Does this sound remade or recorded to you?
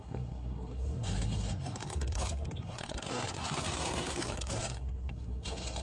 remade